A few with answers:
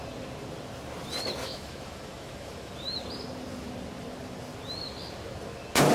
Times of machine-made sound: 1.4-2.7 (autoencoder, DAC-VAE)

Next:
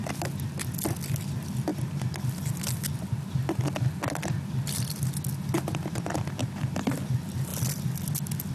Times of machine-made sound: none

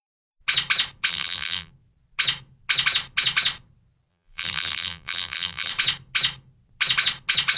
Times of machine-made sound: 1.1-1.7 (vocoder, BigVGAN v2); 4.1-5.7